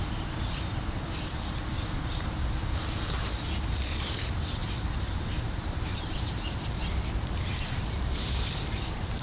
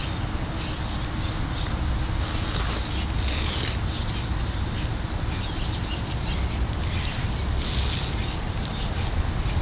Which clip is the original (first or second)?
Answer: second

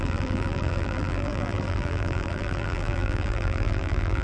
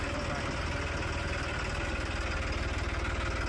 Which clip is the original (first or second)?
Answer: second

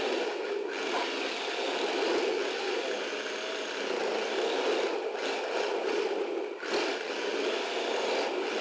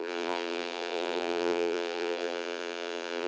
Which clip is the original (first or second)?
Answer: first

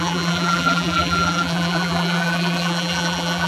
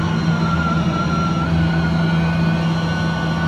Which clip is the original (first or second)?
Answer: second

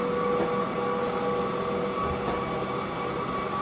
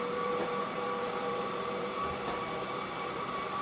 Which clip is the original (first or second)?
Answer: first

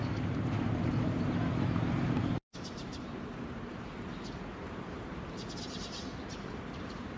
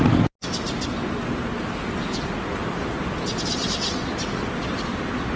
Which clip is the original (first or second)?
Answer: second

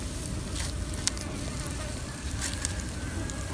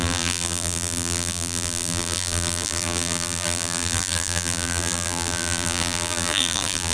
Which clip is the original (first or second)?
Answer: first